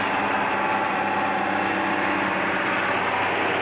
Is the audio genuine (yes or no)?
yes